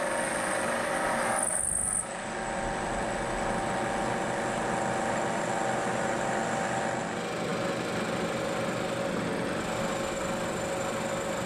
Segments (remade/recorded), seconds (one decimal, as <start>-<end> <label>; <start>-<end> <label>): 0.0-11.5 recorded